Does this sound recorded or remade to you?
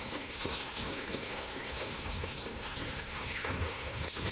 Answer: remade